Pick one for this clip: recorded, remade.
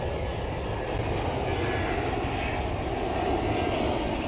recorded